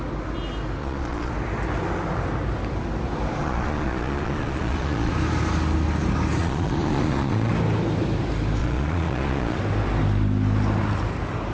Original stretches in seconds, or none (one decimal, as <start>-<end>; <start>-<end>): 0.0-0.8; 1.3-3.4; 5.1-6.4; 7.5-8.6; 9.6-11.5